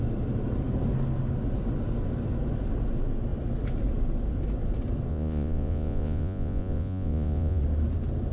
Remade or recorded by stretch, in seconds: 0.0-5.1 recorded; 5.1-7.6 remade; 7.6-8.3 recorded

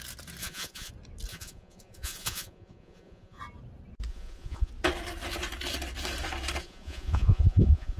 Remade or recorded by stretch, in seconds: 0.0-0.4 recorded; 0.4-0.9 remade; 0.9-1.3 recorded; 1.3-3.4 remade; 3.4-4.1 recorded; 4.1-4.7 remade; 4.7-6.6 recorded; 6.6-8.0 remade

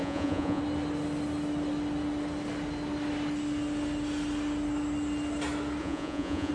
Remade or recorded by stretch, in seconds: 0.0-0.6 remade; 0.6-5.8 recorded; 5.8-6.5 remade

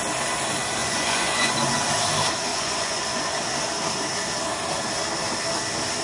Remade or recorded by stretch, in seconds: 0.0-0.8 recorded; 0.8-1.5 remade; 1.5-2.5 recorded; 2.5-3.4 remade; 3.4-6.0 recorded

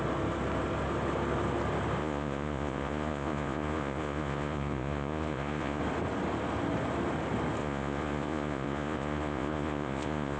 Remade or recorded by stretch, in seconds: 0.0-2.0 recorded; 2.0-5.8 remade; 5.8-7.6 recorded; 7.6-10.4 remade

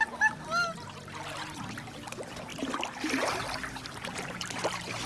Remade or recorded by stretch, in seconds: 0.0-5.1 recorded